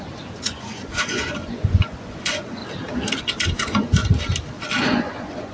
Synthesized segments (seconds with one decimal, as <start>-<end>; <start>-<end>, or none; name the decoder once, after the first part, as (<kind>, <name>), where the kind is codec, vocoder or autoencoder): 0.0-2.6 (vocoder, Vocos); 3.2-4.0; 4.8-5.5